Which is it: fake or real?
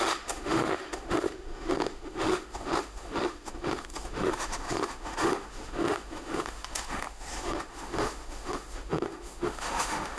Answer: fake